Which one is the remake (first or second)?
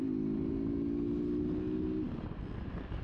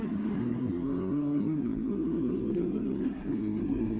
second